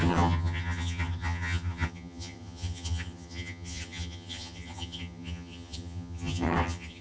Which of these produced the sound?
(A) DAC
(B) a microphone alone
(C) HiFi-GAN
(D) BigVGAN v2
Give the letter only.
C